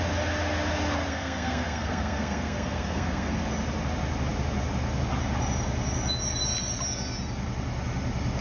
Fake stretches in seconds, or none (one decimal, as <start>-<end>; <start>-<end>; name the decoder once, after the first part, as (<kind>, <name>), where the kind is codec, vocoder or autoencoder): 1.1-3.4 (codec, SNAC)

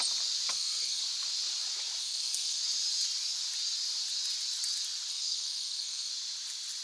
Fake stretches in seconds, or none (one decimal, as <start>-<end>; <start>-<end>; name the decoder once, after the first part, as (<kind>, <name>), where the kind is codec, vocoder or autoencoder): 0.5-1.0 (codec, SNAC); 2.0-2.6; 5.1-6.1

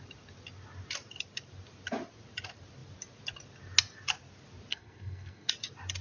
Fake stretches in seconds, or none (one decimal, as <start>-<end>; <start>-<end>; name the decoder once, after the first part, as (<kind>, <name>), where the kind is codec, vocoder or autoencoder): 4.7-5.5 (codec, SNAC)

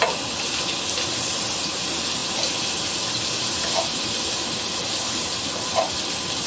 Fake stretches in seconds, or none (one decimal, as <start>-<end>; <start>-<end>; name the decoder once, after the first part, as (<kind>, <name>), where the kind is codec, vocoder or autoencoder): none

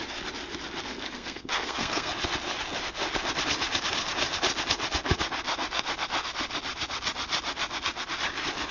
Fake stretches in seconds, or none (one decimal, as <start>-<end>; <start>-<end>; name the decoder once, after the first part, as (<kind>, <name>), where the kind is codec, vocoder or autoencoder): 0.9-2.1 (codec, SNAC)